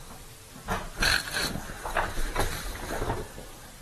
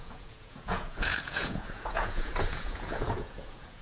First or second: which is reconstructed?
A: second